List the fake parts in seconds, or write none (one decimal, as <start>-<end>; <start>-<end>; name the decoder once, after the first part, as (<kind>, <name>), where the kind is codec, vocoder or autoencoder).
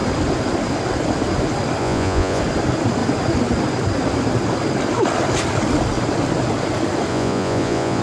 1.8-2.4 (vocoder, Vocos); 7.1-8.0